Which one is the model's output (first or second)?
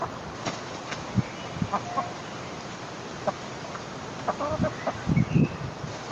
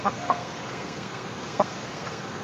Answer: second